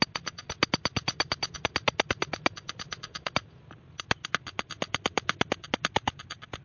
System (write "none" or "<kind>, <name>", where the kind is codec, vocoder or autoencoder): none